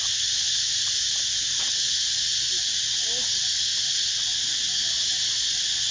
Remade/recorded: recorded